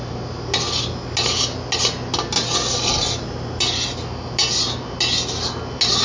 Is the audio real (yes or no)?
yes